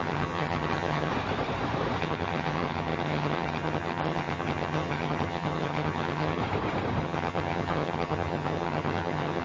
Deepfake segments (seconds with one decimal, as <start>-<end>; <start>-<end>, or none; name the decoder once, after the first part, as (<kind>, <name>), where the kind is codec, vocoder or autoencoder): 0.0-1.1 (vocoder, HiFi-GAN); 2.0-6.4; 7.0-9.4